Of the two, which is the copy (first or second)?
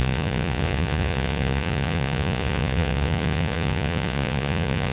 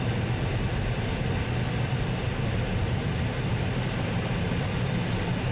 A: first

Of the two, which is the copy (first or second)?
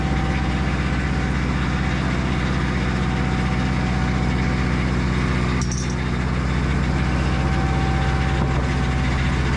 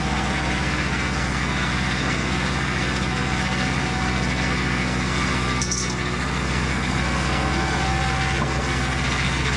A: second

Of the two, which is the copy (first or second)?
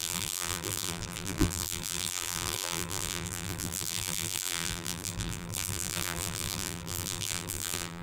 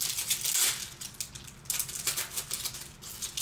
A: first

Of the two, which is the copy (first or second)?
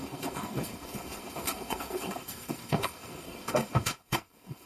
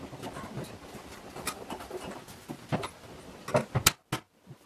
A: first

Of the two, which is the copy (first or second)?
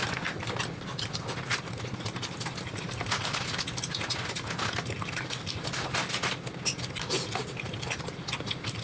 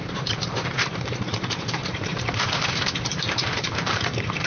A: second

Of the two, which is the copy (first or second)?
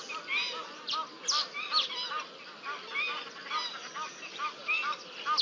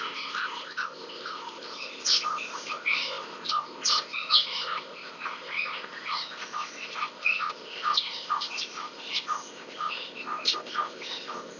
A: second